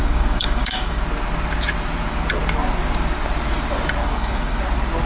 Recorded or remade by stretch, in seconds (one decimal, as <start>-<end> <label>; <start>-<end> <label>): 0.0-1.0 remade; 1.0-4.0 recorded; 4.0-4.6 remade; 4.6-5.1 recorded